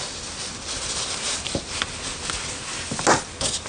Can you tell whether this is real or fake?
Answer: real